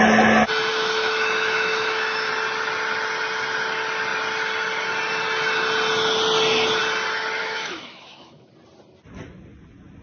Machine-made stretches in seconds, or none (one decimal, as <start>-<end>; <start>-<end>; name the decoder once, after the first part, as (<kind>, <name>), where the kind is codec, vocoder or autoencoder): 0.7-2.3 (autoencoder, DAC-VAE); 7.4-8.5